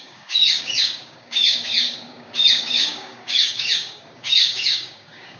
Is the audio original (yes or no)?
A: no